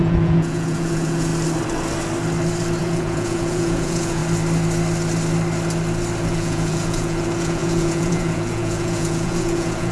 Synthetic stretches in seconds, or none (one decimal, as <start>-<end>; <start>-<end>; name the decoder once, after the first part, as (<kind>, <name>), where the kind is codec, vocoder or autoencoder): 0.0-1.3 (vocoder, Vocos); 2.8-4.2; 6.3-9.9